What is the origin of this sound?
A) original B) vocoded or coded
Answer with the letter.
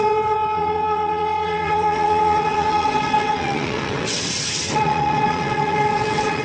B